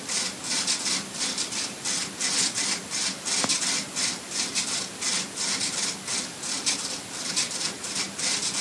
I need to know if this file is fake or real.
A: real